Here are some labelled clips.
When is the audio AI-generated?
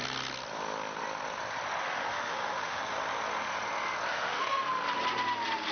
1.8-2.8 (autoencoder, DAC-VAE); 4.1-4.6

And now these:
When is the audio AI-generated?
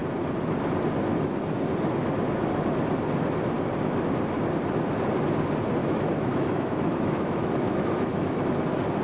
5.8-8.5 (autoencoder, DAC-VAE)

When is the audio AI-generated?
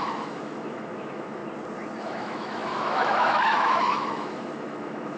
0.0-1.4 (autoencoder, DAC-VAE); 2.0-5.2